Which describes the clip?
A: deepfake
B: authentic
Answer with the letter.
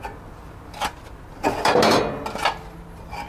B